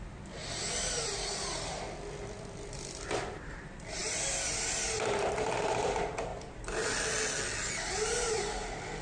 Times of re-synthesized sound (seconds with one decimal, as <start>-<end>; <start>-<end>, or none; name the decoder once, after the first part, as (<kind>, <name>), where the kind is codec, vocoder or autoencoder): 0.0-4.0 (vocoder, BigVGAN v2); 5.6-6.3; 7.7-9.0